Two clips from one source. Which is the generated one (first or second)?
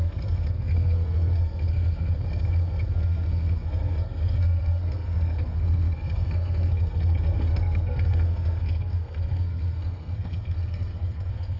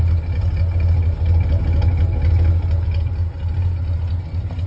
first